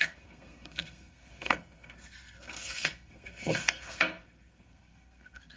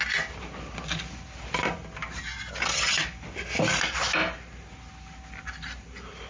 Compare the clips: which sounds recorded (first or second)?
second